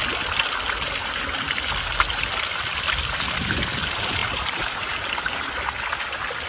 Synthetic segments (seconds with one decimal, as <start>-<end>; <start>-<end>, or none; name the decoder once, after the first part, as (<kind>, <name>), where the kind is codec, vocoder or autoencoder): 4.2-5.5 (vocoder, BigVGAN v2)

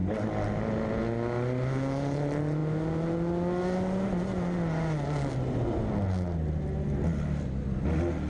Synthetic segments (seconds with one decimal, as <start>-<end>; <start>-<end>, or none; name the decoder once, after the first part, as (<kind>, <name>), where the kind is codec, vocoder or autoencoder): none

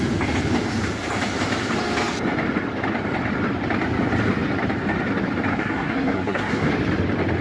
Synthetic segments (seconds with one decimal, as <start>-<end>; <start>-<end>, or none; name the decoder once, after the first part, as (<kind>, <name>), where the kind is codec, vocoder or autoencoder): 5.5-6.7 (codec, SNAC)

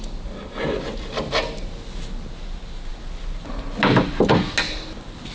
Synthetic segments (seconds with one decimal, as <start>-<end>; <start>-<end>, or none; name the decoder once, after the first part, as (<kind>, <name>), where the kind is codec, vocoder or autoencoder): none

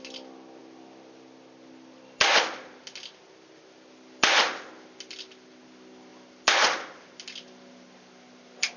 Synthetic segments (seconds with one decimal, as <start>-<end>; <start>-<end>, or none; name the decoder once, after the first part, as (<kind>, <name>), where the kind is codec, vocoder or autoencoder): none

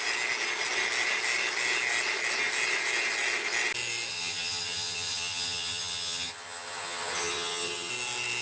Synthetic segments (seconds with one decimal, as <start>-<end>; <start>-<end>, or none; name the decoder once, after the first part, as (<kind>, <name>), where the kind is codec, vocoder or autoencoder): 4.1-7.9 (vocoder, HiFi-GAN)

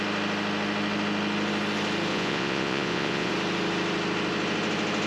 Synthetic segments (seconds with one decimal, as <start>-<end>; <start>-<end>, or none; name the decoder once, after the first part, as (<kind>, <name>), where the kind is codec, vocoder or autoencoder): 2.1-3.3 (vocoder, Vocos)

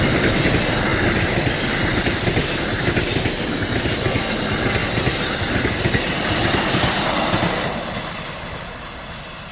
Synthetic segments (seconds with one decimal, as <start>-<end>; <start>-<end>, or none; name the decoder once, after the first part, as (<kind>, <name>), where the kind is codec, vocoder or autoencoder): none